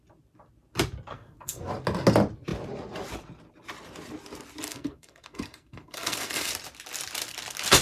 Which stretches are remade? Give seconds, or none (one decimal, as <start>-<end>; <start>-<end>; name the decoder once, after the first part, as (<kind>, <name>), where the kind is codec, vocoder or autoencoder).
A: 1.1-1.7 (codec, SNAC); 4.7-6.5